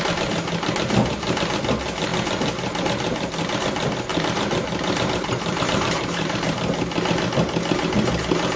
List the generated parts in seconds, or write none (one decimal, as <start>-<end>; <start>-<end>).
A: 4.1-6.6